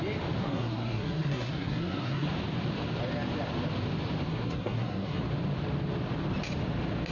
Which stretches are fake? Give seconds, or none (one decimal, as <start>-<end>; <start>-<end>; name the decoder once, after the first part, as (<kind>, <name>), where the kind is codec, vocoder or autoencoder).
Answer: 0.4-2.3 (codec, SNAC); 4.3-5.2